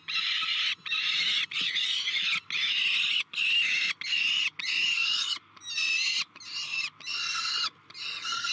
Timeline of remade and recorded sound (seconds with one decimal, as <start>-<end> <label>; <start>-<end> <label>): 0.0-8.5 recorded